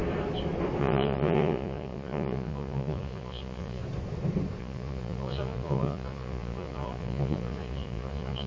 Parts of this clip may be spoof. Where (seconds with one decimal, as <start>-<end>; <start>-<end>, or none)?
0.8-3.8; 4.6-8.5